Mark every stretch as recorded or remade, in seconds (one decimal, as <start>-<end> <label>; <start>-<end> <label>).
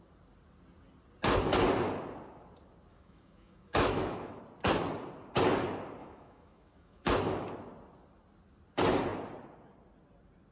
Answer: 0.0-2.9 recorded; 2.9-4.4 remade; 4.4-6.0 recorded; 6.0-7.1 remade; 7.1-10.5 recorded